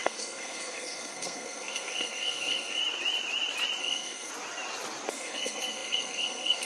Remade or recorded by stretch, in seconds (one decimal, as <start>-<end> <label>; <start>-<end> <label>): 0.0-2.8 remade; 2.8-3.8 recorded; 3.8-4.3 remade; 4.3-5.1 recorded; 5.1-6.6 remade